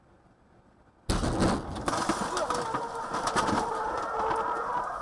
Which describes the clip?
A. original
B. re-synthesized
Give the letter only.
A